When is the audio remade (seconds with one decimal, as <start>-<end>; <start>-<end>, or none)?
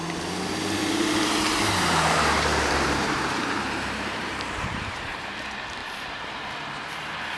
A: 0.8-5.2